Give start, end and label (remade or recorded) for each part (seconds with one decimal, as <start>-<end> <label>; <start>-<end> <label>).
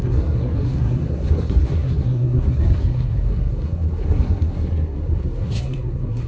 0.0-6.3 remade